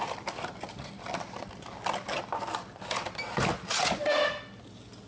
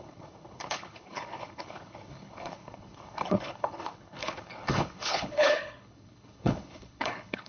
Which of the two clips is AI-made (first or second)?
second